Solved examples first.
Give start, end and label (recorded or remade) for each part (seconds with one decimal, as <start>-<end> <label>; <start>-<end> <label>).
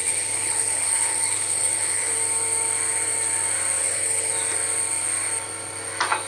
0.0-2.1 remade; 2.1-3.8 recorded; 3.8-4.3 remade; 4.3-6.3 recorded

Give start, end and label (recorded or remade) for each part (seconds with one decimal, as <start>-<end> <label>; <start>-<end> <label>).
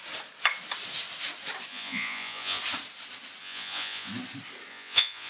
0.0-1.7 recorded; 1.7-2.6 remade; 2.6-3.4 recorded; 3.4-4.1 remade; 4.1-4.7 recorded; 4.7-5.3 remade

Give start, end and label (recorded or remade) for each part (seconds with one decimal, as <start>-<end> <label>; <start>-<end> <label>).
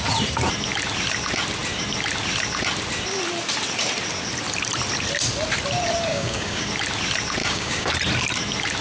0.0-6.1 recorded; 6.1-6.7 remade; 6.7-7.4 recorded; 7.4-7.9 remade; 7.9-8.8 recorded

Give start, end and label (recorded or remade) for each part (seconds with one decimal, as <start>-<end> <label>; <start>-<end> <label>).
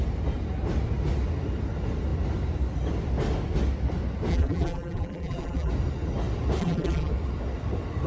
0.0-4.3 recorded; 4.3-5.7 remade; 5.7-6.6 recorded; 6.6-7.1 remade; 7.1-8.1 recorded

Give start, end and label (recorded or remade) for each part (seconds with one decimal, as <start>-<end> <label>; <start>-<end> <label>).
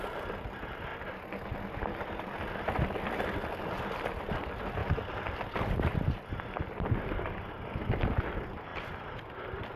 0.0-9.8 recorded